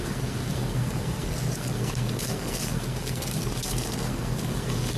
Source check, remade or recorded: remade